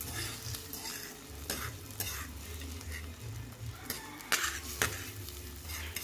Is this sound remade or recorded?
recorded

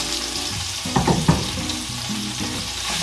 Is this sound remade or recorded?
remade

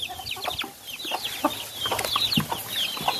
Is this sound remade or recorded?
recorded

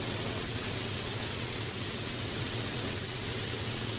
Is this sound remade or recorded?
remade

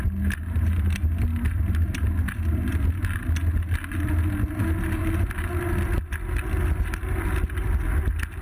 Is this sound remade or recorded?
recorded